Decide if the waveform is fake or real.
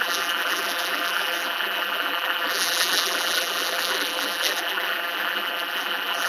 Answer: fake